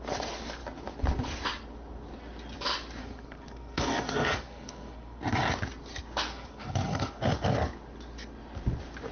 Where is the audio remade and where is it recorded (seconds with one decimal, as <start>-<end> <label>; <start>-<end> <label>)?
0.0-3.0 recorded; 3.0-5.2 remade; 5.2-6.3 recorded; 6.3-7.2 remade; 7.2-9.1 recorded